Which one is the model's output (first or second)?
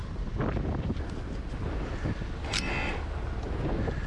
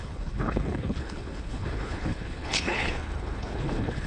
second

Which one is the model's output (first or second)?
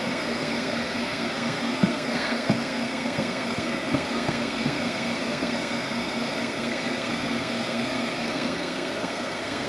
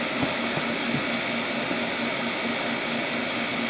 first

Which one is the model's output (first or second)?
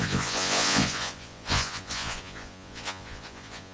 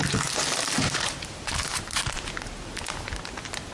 first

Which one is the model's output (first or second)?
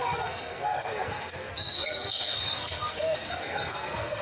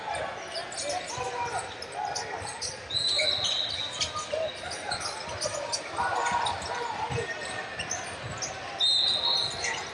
first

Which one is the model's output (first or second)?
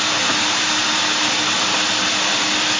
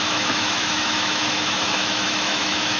second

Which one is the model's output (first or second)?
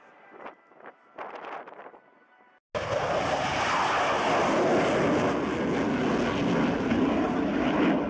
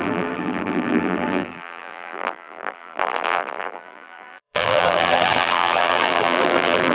second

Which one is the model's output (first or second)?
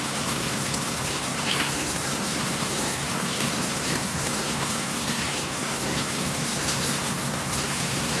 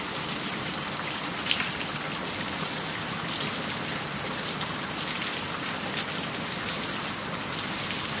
first